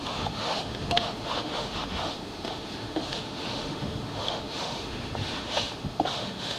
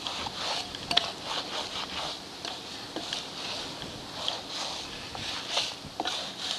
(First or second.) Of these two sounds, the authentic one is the second